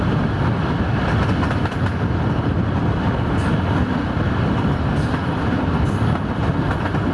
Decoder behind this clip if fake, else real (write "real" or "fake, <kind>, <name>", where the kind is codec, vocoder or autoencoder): real